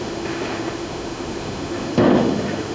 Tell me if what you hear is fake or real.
fake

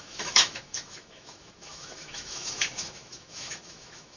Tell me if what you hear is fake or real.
fake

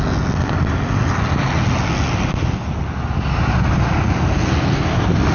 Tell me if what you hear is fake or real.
real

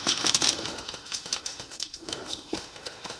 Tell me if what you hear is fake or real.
fake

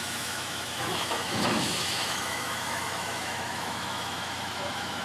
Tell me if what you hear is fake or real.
fake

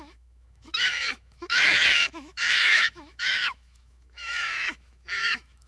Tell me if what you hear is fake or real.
fake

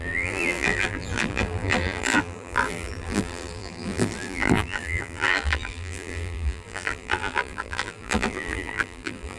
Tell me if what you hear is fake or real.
fake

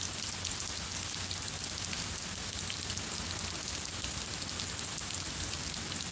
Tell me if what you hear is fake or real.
real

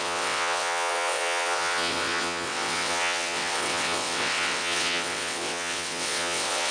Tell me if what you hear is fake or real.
fake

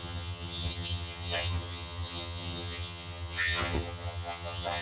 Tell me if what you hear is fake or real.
fake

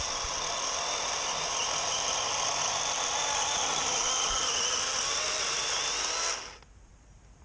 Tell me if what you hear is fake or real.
real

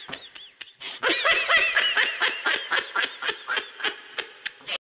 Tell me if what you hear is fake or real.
real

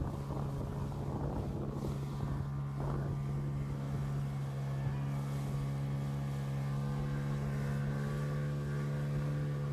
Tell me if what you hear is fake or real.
real